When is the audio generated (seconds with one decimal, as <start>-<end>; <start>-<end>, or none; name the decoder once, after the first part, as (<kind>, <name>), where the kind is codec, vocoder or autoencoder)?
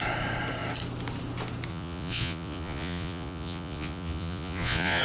1.7-5.0 (vocoder, Vocos)